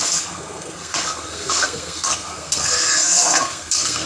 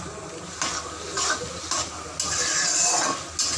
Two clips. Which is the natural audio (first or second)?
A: second